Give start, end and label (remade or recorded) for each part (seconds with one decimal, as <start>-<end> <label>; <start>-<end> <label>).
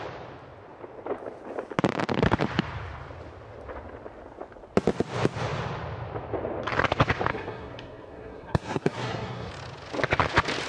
0.0-7.3 recorded; 7.3-9.5 remade; 9.5-10.7 recorded